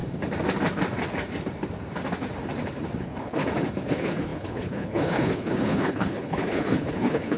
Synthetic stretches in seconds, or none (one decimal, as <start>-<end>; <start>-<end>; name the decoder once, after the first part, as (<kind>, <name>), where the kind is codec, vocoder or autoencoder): 3.0-3.4 (codec, HILCodec); 3.9-7.4